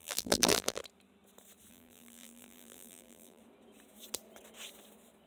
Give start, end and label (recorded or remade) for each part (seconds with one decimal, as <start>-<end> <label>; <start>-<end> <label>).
0.0-0.8 remade; 0.8-1.7 recorded; 1.7-3.4 remade; 3.4-5.3 recorded